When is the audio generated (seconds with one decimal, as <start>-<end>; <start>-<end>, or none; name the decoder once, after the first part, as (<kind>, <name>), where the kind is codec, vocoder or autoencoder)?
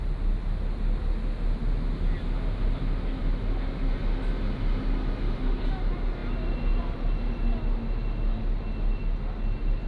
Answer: none